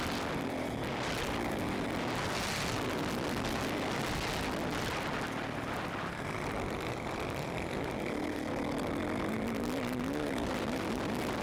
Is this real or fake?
real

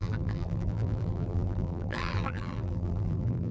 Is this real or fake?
fake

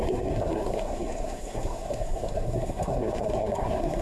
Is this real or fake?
fake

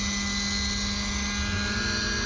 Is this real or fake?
real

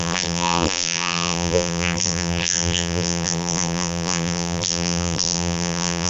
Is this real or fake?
fake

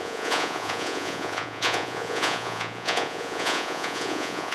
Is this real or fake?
fake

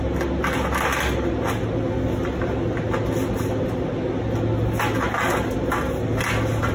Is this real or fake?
real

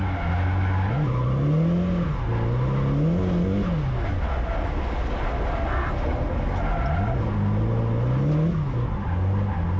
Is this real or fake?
real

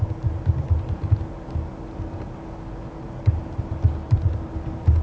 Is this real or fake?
real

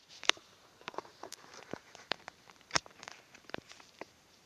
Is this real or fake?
fake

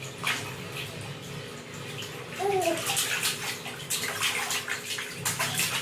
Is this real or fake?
real